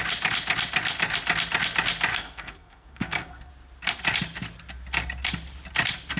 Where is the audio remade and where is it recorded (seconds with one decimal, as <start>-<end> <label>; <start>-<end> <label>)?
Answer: 0.0-2.1 recorded; 2.1-3.5 remade; 3.5-6.2 recorded